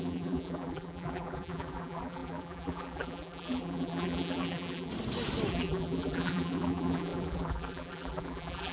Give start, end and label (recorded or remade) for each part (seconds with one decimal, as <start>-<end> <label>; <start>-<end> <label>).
0.0-4.9 remade; 4.9-5.5 recorded; 5.5-8.7 remade